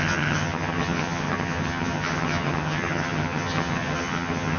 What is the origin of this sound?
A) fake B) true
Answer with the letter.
A